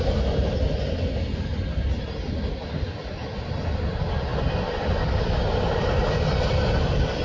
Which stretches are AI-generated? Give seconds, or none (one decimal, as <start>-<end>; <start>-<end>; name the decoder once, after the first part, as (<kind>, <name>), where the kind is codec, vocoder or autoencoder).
none